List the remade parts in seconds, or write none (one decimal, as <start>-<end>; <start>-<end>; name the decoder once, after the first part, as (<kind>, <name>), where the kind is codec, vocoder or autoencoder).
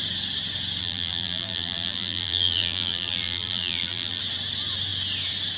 0.8-4.2 (vocoder, BigVGAN v2)